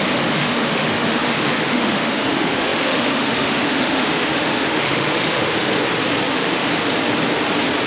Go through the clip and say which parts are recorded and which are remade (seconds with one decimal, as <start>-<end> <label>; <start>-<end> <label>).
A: 0.0-5.7 remade; 5.7-6.3 recorded; 6.3-6.7 remade; 6.7-7.9 recorded

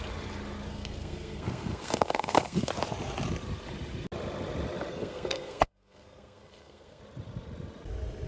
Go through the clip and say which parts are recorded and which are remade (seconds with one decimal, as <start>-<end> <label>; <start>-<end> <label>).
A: 0.0-0.7 recorded; 0.7-2.7 remade; 2.7-4.9 recorded; 4.9-7.0 remade; 7.0-8.3 recorded

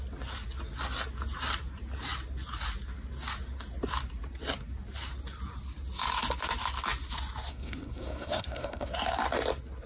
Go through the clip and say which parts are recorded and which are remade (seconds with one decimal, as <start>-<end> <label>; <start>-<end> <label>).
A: 0.0-7.5 recorded; 7.5-8.9 remade; 8.9-9.9 recorded

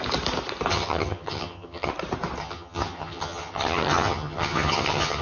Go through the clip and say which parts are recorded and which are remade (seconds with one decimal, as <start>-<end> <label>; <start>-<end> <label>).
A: 0.0-0.7 recorded; 0.7-1.9 remade; 1.9-2.4 recorded; 2.4-5.2 remade

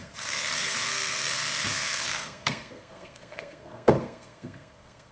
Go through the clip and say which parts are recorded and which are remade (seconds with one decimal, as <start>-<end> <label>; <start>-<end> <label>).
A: 0.0-5.1 remade

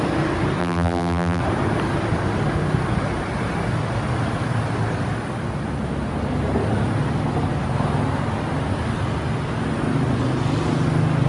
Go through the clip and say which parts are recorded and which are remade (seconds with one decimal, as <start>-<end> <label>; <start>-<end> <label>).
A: 0.0-0.6 recorded; 0.6-1.4 remade; 1.4-11.3 recorded

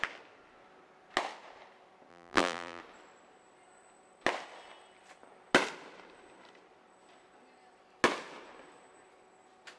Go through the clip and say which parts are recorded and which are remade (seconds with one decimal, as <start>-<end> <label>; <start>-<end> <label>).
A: 0.0-2.1 recorded; 2.1-2.8 remade; 2.8-9.8 recorded